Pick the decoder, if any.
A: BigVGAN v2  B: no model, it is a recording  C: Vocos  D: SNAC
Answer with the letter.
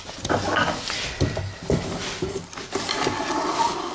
B